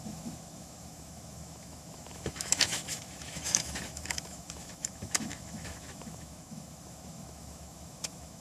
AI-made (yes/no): yes